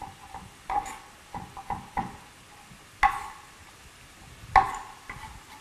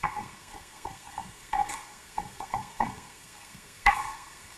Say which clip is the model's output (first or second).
second